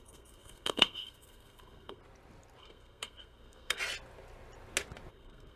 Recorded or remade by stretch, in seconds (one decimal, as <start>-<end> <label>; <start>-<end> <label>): 0.0-2.0 remade; 2.0-2.6 recorded; 2.6-3.8 remade; 3.8-5.1 recorded; 5.1-5.6 remade